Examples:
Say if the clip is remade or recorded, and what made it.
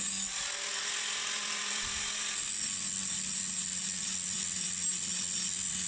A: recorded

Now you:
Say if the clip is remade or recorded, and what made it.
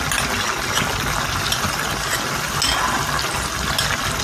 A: recorded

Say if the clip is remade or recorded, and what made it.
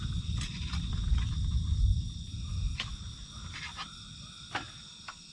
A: recorded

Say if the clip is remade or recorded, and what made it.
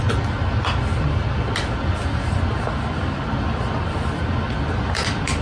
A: recorded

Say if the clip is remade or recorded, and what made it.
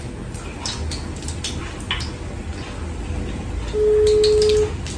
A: recorded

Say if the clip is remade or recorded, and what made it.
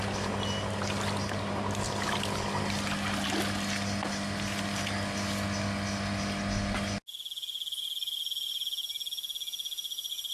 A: recorded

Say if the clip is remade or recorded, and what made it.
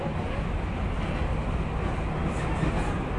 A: recorded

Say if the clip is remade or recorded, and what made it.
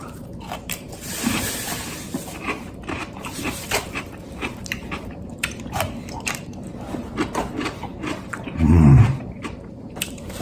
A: remade, vocoder, BigVGAN v2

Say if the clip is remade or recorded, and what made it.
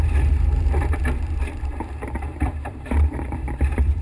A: remade, vocoder, BigVGAN v2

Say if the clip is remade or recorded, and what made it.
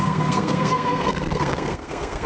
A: remade, codec, SNAC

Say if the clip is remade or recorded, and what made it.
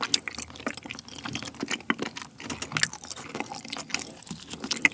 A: recorded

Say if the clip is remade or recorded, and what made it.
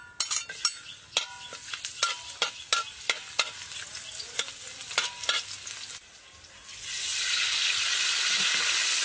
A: recorded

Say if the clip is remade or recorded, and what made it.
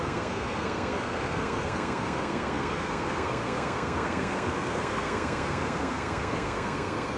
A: remade, codec, SNAC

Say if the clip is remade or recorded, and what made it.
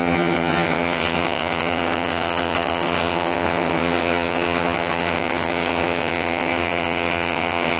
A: remade, vocoder, HiFi-GAN